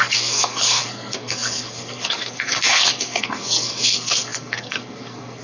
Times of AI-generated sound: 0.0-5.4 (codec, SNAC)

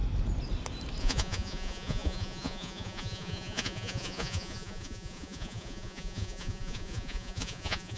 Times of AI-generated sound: 1.0-8.0 (vocoder, Vocos)

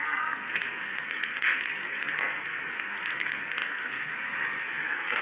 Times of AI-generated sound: 0.0-5.2 (codec, SNAC)

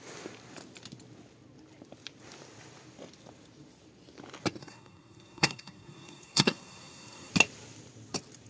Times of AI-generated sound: 4.6-7.3 (codec, SNAC)